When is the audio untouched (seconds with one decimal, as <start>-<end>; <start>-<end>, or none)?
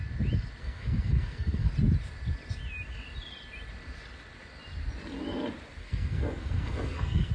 0.0-0.6; 1.7-5.8